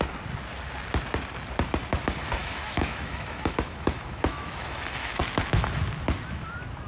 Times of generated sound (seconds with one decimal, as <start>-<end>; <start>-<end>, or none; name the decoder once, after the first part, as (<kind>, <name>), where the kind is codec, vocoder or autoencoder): 2.4-5.2 (autoencoder, DAC-VAE)